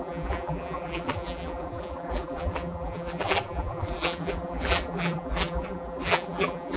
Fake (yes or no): yes